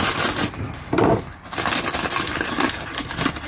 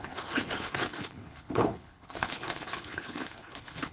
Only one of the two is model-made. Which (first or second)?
second